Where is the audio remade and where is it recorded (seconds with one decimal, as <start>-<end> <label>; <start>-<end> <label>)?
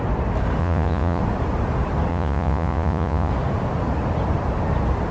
0.0-0.6 recorded; 0.6-1.2 remade; 1.2-2.1 recorded; 2.1-3.3 remade; 3.3-5.1 recorded